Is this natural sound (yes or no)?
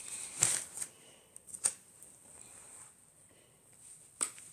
no